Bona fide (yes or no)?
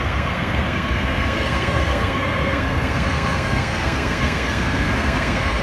no